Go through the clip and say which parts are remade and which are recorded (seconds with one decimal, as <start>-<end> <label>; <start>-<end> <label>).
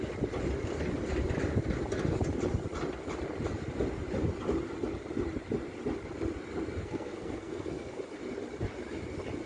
0.0-6.8 recorded; 6.8-8.0 remade; 8.0-9.5 recorded